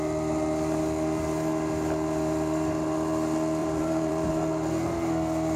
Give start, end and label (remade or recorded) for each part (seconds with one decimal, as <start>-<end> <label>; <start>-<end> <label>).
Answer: 0.0-3.6 recorded; 3.6-4.3 remade; 4.3-5.6 recorded